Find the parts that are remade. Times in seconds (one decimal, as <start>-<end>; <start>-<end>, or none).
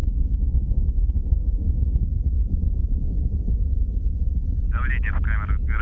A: 0.0-2.2